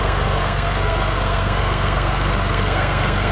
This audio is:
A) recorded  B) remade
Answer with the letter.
B